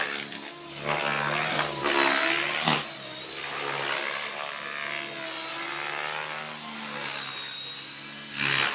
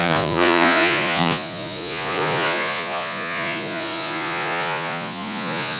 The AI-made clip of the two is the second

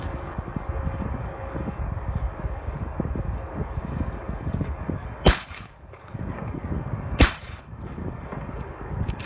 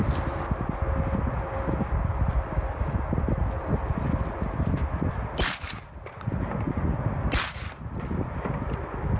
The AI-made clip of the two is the first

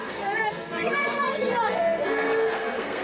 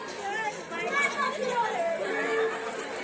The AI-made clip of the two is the first